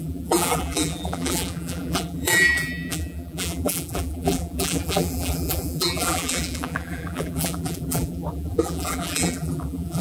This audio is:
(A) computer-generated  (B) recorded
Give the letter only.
A